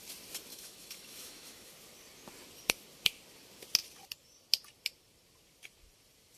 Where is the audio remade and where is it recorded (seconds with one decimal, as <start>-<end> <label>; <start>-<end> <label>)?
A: 0.0-0.5 recorded; 0.5-1.7 remade; 1.7-6.4 recorded